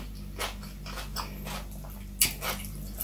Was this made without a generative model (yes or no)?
yes